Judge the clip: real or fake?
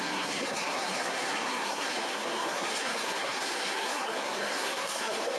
fake